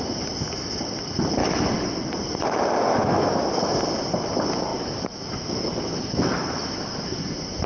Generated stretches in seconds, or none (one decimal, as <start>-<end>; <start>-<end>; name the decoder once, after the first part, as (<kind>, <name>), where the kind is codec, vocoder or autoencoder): 1.4-2.0 (autoencoder, DAC-VAE); 2.9-3.7; 4.7-7.2